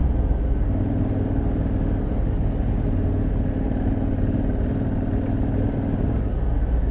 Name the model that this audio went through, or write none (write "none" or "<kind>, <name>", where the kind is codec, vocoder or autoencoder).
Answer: none